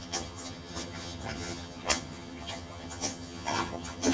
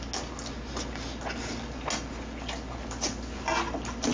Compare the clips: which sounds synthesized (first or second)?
first